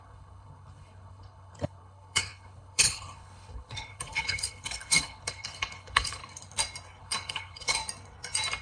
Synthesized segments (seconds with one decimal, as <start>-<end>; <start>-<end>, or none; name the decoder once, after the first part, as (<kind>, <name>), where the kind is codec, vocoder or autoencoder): 0.0-6.2 (codec, HILCodec); 7.0-7.8